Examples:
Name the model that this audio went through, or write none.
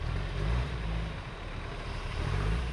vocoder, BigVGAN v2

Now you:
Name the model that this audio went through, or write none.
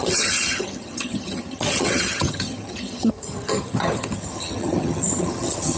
vocoder, HiFi-GAN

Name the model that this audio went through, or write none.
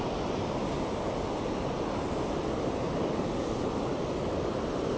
none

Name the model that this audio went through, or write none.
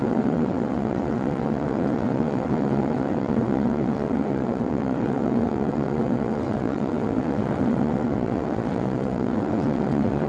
vocoder, WaveNeXt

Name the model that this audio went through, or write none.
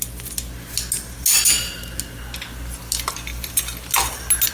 none